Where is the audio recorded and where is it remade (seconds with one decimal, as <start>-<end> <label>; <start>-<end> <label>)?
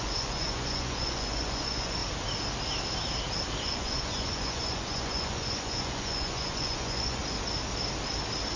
0.0-2.0 remade; 2.0-3.6 recorded; 3.6-7.2 remade; 7.2-8.6 recorded